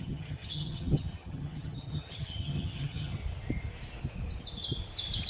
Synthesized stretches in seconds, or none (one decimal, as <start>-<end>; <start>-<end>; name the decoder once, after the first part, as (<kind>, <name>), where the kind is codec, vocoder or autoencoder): 0.0-3.2 (vocoder, HiFi-GAN)